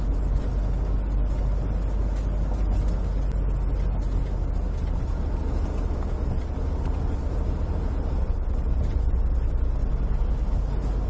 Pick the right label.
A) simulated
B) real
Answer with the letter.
B